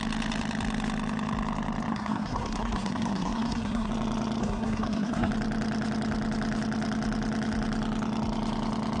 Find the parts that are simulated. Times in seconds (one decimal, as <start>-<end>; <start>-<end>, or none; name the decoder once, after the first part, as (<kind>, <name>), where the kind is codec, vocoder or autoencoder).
1.9-3.9 (codec, SNAC); 4.4-5.3